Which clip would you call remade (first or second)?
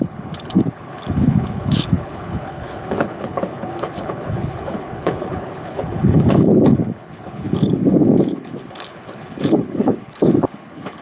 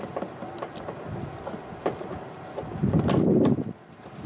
first